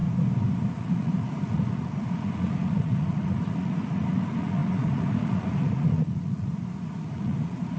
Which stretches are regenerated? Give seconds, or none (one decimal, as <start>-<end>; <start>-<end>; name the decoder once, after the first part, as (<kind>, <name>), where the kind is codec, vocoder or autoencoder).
0.7-7.8 (vocoder, Vocos)